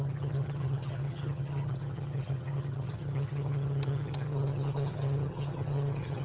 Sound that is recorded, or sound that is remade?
remade